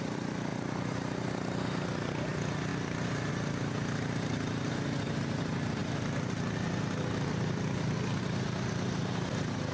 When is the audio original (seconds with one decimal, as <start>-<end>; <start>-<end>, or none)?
0.0-2.7; 3.3-5.8; 8.2-9.7